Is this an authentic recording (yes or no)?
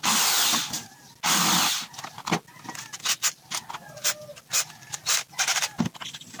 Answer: yes